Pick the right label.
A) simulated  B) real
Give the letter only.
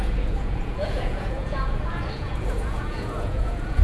A